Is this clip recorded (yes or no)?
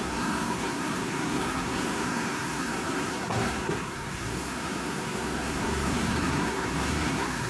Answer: no